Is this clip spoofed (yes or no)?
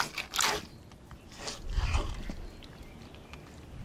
no